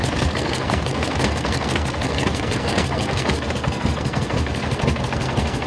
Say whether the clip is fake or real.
fake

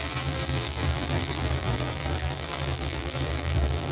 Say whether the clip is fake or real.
fake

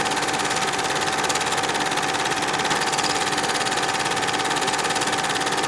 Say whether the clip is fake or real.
real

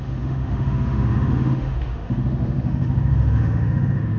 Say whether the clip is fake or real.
fake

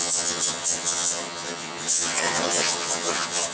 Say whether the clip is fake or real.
fake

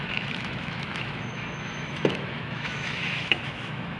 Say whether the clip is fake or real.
fake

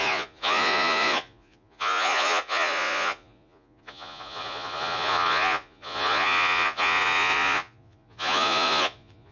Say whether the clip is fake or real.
fake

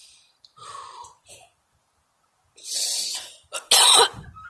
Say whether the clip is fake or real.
real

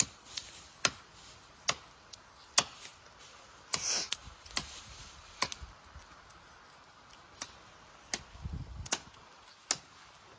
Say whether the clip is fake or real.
real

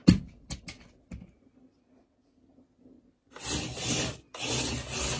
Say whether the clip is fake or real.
real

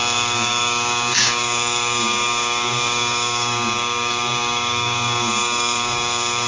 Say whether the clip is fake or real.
fake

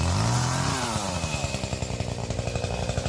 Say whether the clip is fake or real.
real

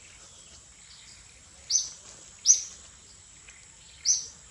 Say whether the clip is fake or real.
real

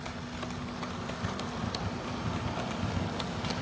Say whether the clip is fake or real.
real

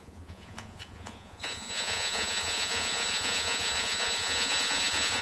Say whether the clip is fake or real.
fake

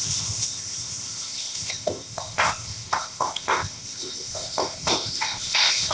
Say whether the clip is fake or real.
fake